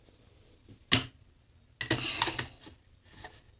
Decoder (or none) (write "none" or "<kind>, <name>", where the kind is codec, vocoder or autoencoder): none